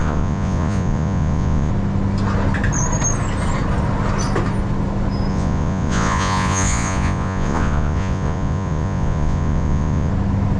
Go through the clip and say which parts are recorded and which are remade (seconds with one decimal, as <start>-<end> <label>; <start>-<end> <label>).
0.0-1.7 remade; 1.7-5.3 recorded; 5.3-10.1 remade; 10.1-10.6 recorded